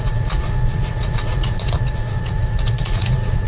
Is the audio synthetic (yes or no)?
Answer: yes